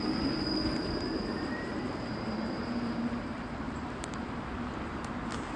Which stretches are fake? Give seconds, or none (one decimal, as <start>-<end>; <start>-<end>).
0.8-4.2